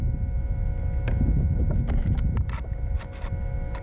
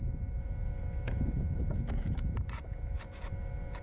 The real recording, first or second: first